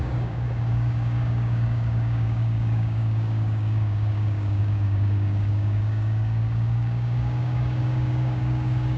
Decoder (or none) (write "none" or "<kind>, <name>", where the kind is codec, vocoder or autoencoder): codec, DAC